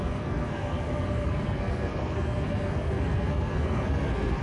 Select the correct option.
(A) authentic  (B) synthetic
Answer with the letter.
B